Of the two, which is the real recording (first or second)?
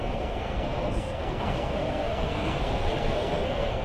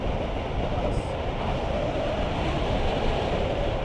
second